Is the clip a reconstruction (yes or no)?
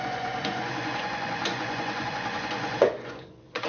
yes